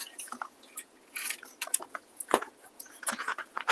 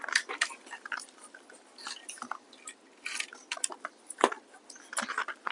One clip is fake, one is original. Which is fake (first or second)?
first